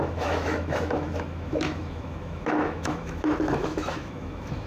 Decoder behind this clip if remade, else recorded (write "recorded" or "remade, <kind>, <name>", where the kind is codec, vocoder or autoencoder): remade, autoencoder, DAC-VAE